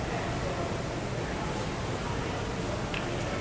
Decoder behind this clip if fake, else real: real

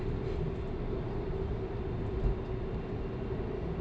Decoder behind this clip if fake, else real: real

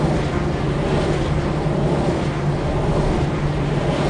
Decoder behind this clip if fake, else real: real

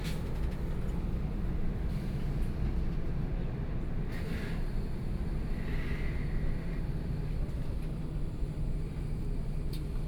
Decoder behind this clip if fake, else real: real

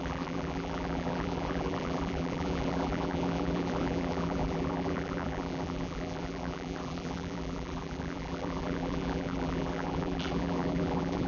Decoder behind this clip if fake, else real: fake, vocoder, BigVGAN v2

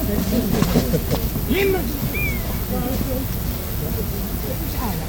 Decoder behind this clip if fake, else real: real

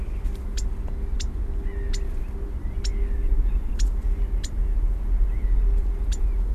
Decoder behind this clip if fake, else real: real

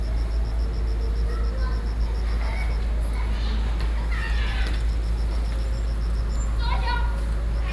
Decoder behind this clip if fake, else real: real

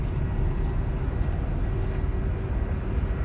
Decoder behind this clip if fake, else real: real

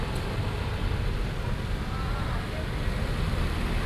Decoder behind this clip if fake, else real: real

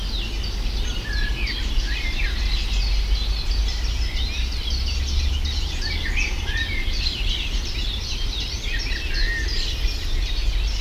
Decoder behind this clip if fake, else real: real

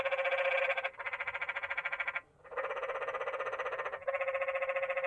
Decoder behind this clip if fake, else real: real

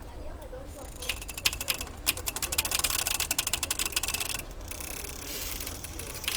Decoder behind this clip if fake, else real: fake, vocoder, BigVGAN v2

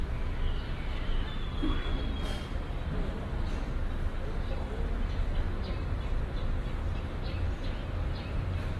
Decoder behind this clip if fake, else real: real